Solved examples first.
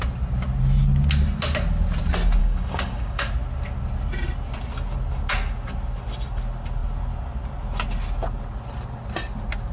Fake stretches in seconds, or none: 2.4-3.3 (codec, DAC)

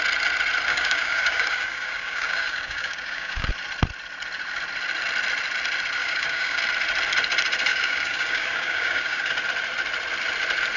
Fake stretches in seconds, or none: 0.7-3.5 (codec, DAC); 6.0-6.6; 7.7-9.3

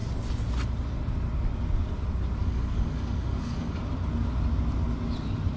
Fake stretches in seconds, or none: 2.4-3.8 (codec, DAC)